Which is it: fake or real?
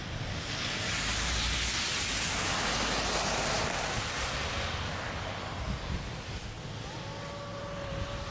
real